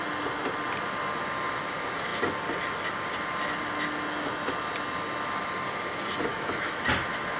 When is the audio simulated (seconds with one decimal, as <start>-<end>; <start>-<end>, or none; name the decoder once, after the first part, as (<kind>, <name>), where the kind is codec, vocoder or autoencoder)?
6.3-6.8 (autoencoder, DAC-VAE)